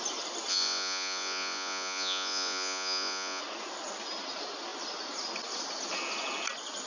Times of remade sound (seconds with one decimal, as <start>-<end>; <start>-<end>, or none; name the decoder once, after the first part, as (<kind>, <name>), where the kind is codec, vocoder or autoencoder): 0.5-3.4 (vocoder, Vocos)